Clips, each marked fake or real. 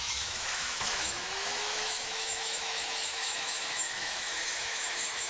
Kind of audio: fake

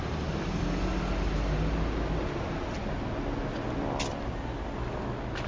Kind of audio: real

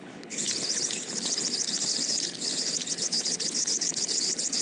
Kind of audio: fake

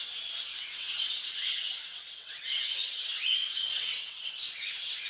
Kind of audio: fake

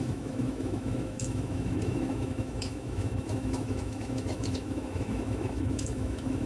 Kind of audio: fake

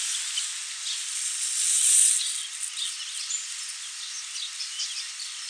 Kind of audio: real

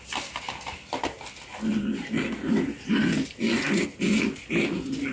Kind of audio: real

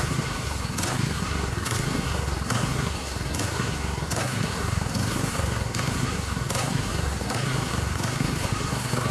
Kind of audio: fake